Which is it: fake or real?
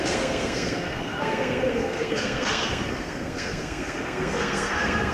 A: fake